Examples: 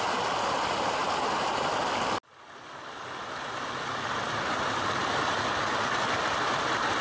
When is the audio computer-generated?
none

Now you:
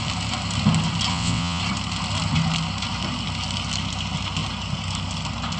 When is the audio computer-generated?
1.1-1.6

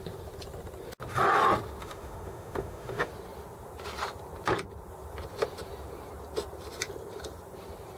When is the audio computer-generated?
1.8-3.1

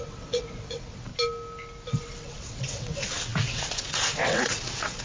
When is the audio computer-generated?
0.0-1.1; 2.0-5.0

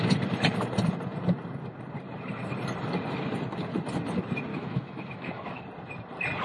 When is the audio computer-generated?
4.5-5.6

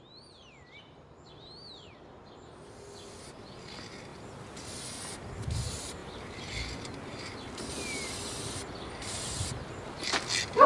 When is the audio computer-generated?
none

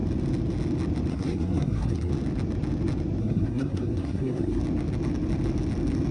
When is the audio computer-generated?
1.1-2.1; 3.2-4.6